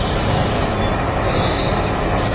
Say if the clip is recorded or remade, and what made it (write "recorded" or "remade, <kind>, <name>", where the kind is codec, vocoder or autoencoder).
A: recorded